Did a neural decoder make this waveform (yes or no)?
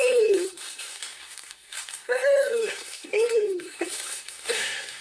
yes